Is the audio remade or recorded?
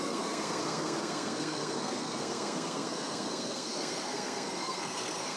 remade